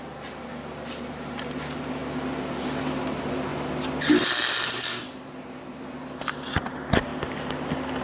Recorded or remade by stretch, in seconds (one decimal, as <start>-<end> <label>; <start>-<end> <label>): 0.0-8.0 recorded